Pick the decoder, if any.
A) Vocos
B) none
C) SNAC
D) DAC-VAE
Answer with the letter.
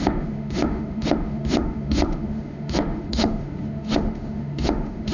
D